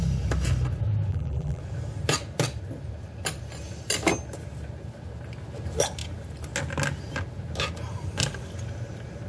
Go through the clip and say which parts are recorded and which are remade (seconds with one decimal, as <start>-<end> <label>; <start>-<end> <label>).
0.0-1.1 recorded; 1.1-1.6 remade; 1.6-9.3 recorded